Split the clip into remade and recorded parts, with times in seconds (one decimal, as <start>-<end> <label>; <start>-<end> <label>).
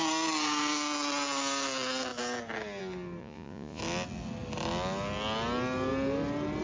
0.0-3.2 recorded; 3.2-3.8 remade; 3.8-6.6 recorded